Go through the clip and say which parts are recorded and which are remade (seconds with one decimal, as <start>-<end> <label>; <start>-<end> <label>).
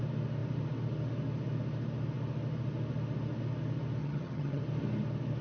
0.0-4.0 recorded; 4.0-4.6 remade; 4.6-5.4 recorded